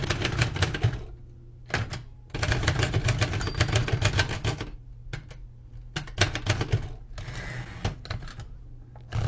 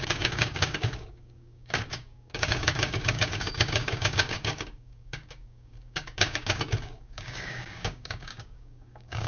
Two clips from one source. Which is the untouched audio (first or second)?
first